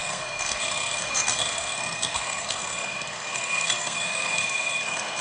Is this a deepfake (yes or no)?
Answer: yes